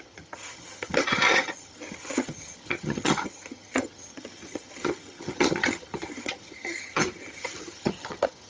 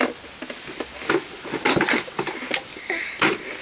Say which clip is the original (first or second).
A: second